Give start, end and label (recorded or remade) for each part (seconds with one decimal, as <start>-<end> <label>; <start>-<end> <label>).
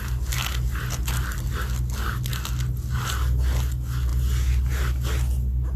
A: 0.0-5.8 recorded